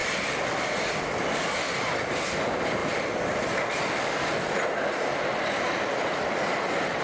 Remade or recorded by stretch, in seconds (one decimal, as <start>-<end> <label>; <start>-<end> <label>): 0.0-2.1 remade; 2.1-2.8 recorded; 2.8-5.1 remade; 5.1-7.0 recorded